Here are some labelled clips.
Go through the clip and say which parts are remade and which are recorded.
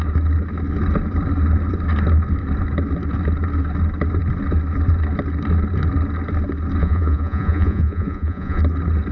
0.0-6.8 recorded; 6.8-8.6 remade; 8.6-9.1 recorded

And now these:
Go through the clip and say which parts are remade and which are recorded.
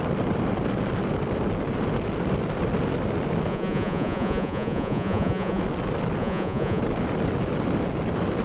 0.0-3.5 recorded; 3.5-5.6 remade; 5.6-6.2 recorded; 6.2-6.8 remade; 6.8-8.4 recorded